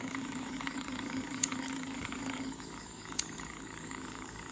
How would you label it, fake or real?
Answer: fake